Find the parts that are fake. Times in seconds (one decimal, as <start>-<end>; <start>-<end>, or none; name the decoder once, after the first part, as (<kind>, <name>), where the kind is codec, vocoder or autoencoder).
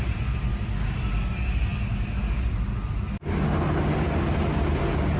none